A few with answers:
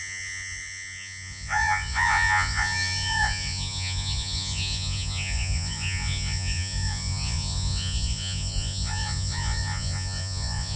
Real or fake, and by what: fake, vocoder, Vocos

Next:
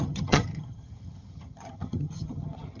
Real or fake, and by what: fake, vocoder, HiFi-GAN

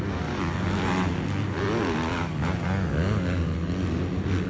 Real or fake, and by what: real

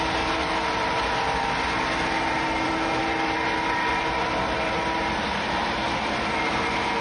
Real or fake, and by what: fake, vocoder, BigVGAN v2